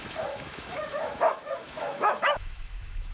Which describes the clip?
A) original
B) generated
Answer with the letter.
B